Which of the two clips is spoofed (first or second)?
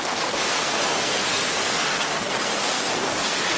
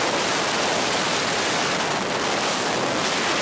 first